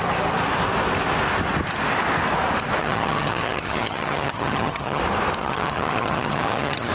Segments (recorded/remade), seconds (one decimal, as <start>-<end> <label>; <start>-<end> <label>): 0.0-2.8 recorded; 2.8-5.0 remade; 5.0-5.4 recorded; 5.4-6.9 remade